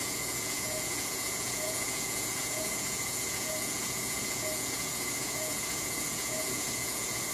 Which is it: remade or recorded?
remade